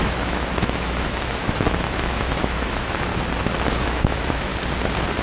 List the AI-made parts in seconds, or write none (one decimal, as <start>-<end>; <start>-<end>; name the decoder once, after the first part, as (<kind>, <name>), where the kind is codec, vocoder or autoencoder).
0.0-3.1 (autoencoder, DAC-VAE); 3.7-4.5